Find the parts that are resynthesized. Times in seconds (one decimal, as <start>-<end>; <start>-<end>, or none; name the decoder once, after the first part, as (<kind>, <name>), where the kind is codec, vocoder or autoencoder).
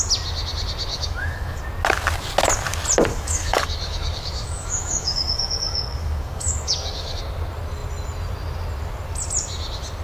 0.9-1.6 (codec, DAC); 3.1-7.2